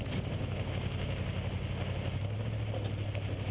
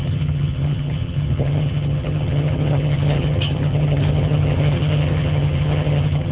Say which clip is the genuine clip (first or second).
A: first